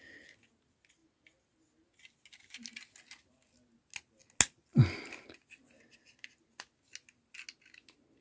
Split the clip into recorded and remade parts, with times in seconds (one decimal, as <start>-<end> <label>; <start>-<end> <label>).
0.0-8.2 recorded